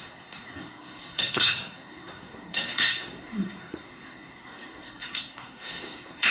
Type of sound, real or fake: fake